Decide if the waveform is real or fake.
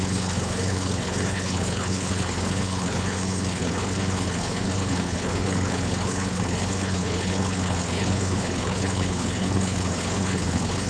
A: fake